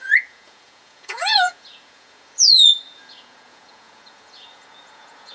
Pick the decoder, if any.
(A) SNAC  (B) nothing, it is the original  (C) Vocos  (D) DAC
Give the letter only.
C